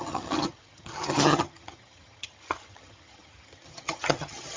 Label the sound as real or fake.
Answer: fake